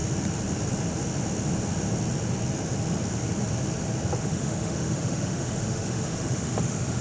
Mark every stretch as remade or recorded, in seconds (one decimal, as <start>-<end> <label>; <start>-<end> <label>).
0.0-4.2 recorded; 4.2-7.0 remade